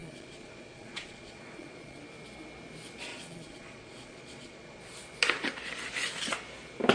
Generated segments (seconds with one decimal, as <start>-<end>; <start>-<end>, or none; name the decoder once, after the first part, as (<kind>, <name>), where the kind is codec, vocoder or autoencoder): 0.0-2.0 (vocoder, Vocos); 3.1-4.8